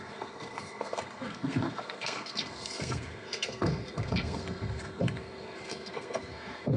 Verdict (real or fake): fake